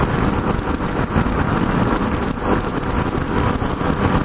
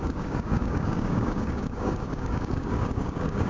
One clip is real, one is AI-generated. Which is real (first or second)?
first